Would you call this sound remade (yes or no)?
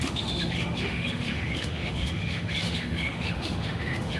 yes